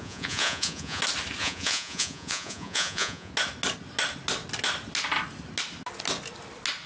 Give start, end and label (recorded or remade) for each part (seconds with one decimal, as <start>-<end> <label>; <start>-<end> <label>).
0.0-1.0 remade; 1.0-1.4 recorded; 1.4-3.3 remade; 3.3-6.9 recorded